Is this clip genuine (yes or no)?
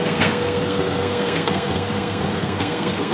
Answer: no